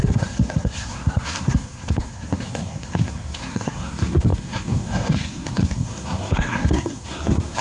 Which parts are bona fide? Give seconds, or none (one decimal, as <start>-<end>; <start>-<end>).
none

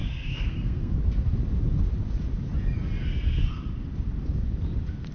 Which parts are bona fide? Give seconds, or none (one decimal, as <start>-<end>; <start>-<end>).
0.9-5.1

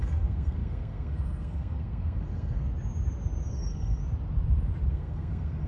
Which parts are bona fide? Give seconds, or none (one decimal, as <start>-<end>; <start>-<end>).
2.7-3.5; 4.0-4.9